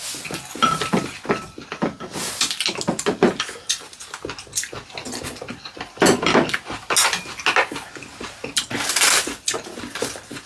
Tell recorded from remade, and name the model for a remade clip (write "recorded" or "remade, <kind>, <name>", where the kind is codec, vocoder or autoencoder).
recorded